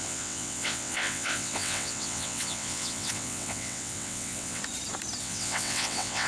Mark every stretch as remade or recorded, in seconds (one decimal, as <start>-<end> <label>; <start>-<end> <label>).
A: 0.0-4.6 remade; 4.6-5.2 recorded; 5.2-6.3 remade